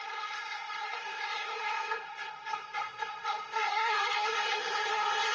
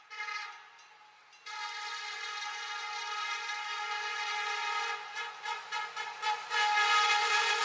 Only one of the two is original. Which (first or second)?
second